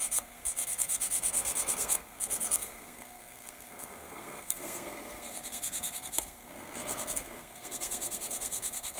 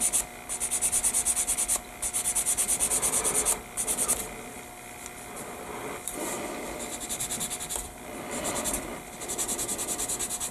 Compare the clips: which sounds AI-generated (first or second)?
first